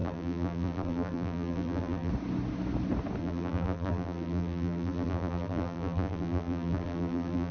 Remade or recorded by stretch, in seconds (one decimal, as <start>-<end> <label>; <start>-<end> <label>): 0.0-2.1 remade; 2.1-3.2 recorded; 3.2-7.5 remade